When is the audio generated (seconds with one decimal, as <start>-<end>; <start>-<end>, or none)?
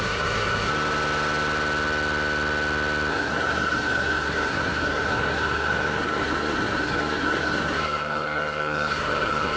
0.0-0.7; 3.1-9.6